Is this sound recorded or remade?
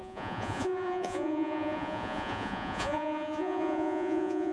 remade